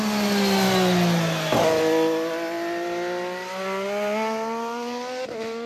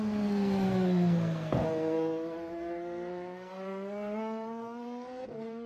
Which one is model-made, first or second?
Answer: second